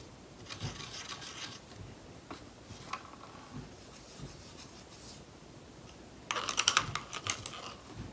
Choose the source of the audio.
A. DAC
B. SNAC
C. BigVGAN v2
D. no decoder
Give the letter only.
D